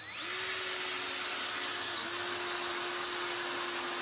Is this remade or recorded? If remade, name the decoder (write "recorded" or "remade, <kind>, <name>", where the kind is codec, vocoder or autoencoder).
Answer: recorded